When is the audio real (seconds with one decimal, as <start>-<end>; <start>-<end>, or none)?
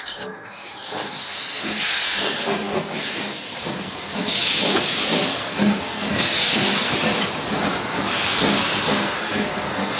7.1-7.8